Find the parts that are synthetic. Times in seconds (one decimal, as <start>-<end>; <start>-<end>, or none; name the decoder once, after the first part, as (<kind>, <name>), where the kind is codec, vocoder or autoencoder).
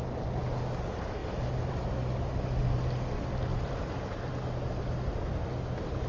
3.5-4.3 (vocoder, BigVGAN v2)